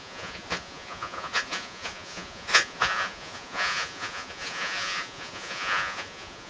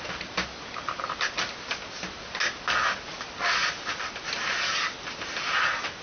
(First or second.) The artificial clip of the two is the first